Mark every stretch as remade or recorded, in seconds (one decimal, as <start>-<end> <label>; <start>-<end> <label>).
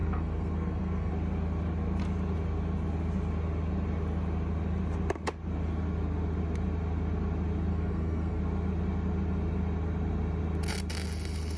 0.0-1.1 remade; 1.1-7.7 recorded; 7.7-8.4 remade; 8.4-11.6 recorded